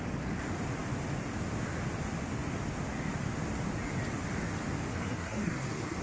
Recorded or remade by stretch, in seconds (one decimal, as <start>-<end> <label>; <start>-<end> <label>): 0.0-4.9 recorded; 4.9-6.0 remade